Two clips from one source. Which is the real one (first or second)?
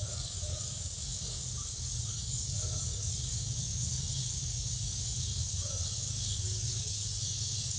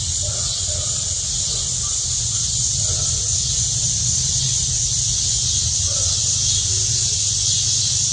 second